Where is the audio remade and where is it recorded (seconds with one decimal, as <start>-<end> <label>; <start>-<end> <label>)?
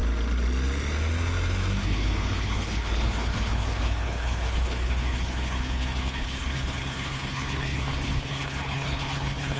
0.0-1.8 recorded; 1.8-9.6 remade